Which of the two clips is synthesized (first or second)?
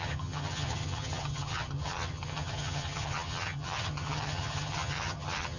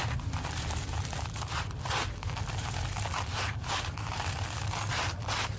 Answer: first